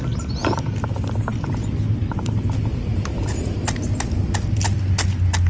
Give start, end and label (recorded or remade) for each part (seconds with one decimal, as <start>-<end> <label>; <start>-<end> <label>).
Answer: 0.0-1.3 recorded; 1.3-4.6 remade; 4.6-5.5 recorded

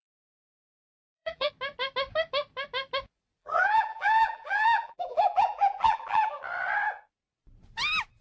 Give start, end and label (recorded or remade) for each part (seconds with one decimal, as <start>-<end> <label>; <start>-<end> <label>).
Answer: 0.0-1.5 remade; 1.5-3.4 recorded; 3.4-6.4 remade; 6.4-8.2 recorded

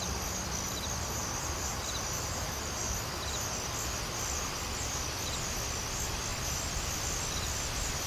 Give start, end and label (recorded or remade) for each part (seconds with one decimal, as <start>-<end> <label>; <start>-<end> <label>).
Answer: 0.0-1.2 recorded; 1.2-2.9 remade; 2.9-6.3 recorded; 6.3-7.2 remade; 7.2-8.1 recorded

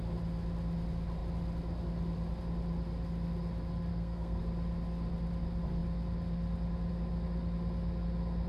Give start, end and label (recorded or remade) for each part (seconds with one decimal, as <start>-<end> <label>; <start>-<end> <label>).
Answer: 0.0-3.9 recorded; 3.9-4.4 remade; 4.4-8.5 recorded

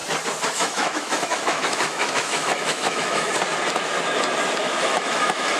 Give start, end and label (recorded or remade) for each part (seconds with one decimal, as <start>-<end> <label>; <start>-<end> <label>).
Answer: 0.0-0.5 recorded; 0.5-3.3 remade; 3.3-4.6 recorded; 4.6-5.6 remade